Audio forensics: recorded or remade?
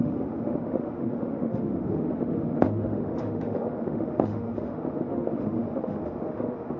remade